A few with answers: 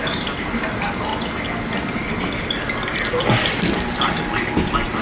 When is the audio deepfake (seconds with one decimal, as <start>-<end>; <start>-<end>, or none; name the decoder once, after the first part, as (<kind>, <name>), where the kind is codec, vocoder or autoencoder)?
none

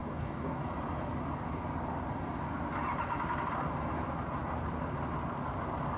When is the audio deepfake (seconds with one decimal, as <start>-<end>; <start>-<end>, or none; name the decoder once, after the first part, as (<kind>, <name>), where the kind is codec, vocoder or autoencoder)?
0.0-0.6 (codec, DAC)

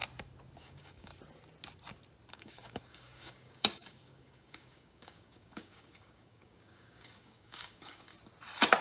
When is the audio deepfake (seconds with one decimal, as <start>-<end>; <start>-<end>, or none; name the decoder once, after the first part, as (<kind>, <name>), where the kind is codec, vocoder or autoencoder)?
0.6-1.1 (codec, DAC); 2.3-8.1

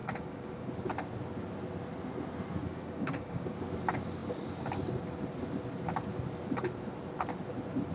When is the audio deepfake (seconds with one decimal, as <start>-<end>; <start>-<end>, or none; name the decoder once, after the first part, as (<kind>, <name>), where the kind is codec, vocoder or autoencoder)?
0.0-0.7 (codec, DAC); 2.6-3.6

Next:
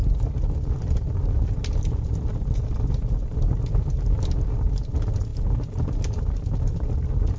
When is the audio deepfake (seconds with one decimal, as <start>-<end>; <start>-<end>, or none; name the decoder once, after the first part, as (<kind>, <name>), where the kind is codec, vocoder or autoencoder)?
none